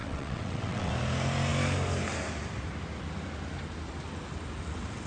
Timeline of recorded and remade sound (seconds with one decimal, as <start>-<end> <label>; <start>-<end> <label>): 0.0-0.9 remade; 0.9-5.1 recorded

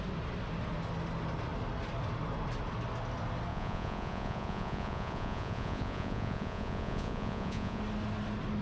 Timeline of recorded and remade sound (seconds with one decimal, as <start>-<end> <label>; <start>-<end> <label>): 0.0-3.5 recorded; 3.5-7.8 remade; 7.8-8.6 recorded